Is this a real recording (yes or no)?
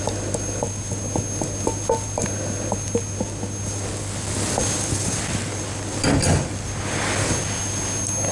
yes